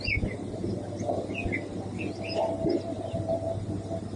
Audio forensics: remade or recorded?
recorded